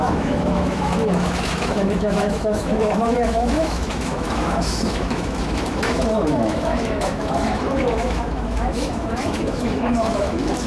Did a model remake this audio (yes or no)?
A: yes